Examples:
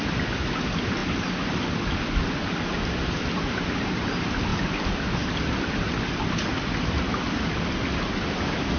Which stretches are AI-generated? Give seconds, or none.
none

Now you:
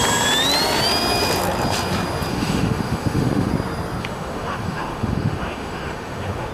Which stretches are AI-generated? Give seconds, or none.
2.3-3.5 (autoencoder, DAC-VAE); 4.0-6.5

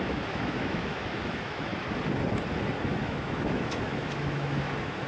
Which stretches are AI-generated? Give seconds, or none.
0.0-1.7 (autoencoder, DAC-VAE); 3.0-5.1